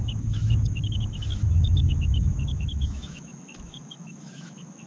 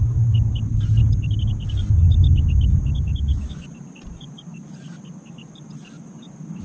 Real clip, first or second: second